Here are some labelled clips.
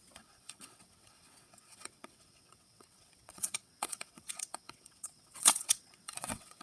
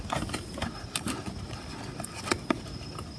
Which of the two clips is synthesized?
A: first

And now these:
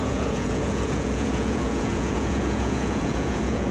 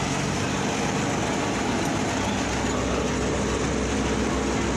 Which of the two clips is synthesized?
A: first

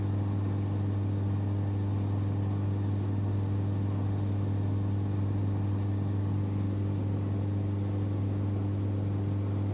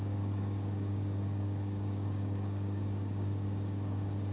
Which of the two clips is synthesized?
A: second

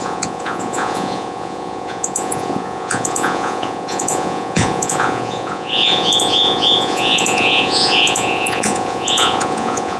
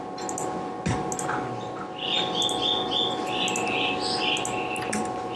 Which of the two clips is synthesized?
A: first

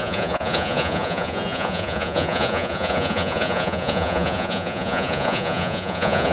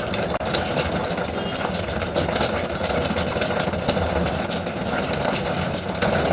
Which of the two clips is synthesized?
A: first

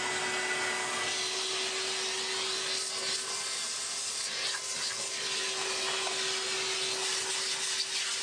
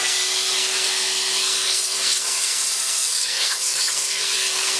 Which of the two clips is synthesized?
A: second